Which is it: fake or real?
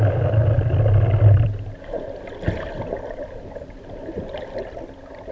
real